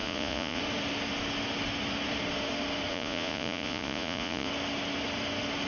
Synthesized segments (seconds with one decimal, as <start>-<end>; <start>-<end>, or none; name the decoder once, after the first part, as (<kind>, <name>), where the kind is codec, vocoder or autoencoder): 0.0-0.6 (vocoder, Vocos); 2.9-4.5